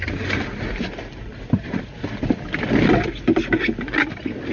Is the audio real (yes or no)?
yes